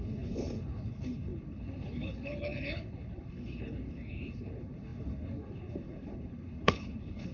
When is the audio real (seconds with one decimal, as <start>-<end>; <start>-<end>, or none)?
none